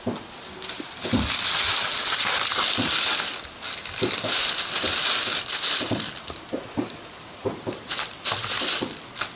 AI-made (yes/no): no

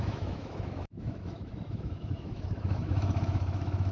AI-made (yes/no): yes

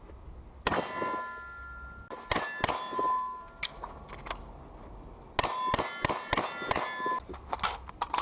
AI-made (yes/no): no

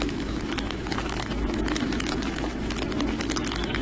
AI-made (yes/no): yes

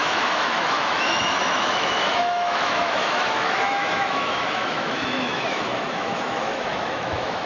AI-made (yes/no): yes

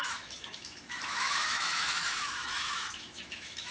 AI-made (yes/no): yes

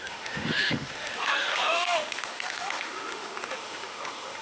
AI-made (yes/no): yes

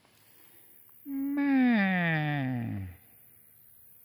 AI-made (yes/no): no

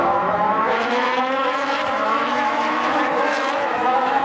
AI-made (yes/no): yes